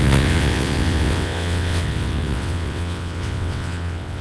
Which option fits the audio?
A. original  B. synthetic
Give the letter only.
B